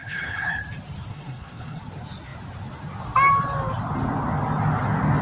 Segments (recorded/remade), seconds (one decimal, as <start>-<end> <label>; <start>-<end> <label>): 0.0-0.6 remade; 0.6-1.1 recorded; 1.1-1.8 remade; 1.8-5.2 recorded